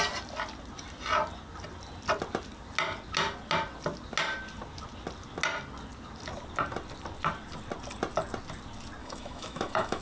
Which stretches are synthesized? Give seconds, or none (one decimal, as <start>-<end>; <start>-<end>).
9.0-10.0